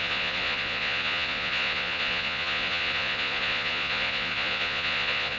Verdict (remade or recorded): remade